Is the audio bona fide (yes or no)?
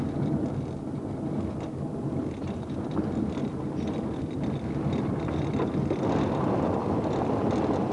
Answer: yes